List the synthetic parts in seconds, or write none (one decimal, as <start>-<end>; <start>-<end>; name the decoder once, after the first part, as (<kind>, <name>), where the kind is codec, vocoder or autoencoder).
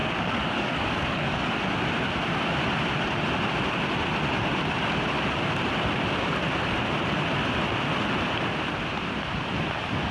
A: 0.0-1.6 (codec, DAC)